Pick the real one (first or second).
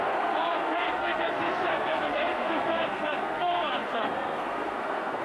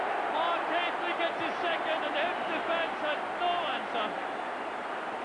second